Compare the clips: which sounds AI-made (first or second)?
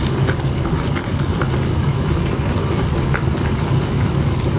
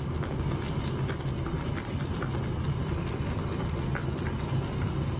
first